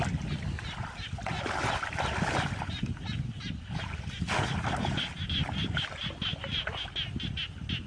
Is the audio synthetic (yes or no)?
no